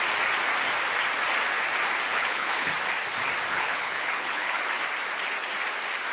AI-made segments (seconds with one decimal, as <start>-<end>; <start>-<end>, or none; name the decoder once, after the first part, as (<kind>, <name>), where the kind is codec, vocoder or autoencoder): 2.1-2.7 (codec, HILCodec); 3.5-4.6